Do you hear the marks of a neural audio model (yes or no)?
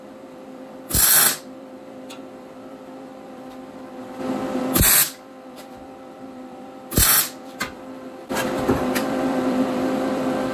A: yes